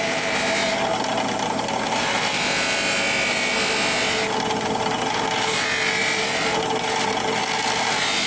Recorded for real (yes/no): yes